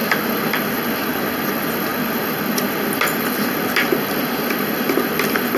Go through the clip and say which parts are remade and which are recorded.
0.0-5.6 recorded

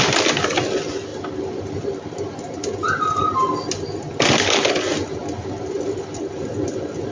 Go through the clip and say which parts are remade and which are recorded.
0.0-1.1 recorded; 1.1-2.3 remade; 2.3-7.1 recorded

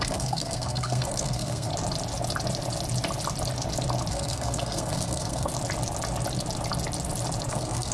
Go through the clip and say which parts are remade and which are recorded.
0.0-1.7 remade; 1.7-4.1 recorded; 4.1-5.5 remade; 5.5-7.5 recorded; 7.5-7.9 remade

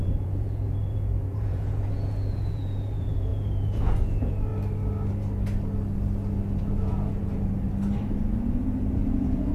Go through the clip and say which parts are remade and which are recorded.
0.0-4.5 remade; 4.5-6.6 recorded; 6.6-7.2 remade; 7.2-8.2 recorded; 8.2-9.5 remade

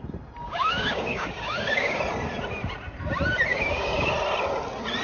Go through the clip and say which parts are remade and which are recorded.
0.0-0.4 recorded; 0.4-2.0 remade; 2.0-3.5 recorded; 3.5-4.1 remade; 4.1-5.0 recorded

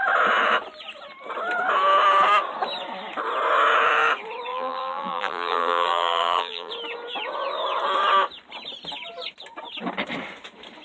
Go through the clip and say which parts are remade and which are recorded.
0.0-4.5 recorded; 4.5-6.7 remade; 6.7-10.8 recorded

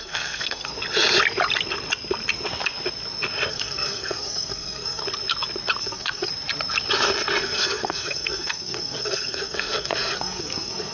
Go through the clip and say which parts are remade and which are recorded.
0.0-0.7 remade; 0.7-3.5 recorded; 3.5-5.0 remade; 5.0-5.8 recorded; 5.8-6.3 remade; 6.3-7.4 recorded; 7.4-10.9 remade